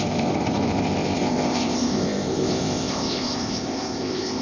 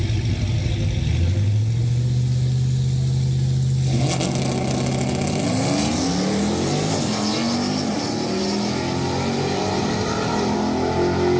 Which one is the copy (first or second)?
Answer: first